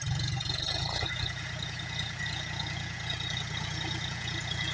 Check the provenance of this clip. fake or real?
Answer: fake